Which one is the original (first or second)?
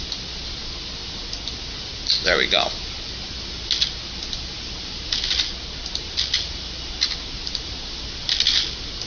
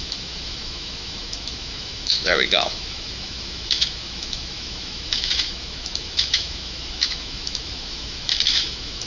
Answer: first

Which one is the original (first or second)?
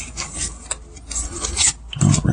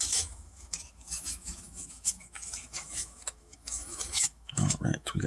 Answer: first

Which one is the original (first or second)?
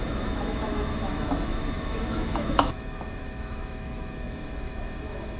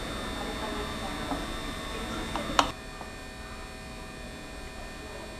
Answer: second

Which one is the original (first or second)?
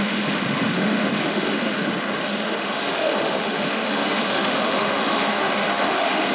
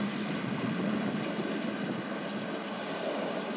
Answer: second